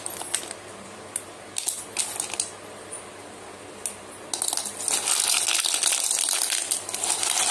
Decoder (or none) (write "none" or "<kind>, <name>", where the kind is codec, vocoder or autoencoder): none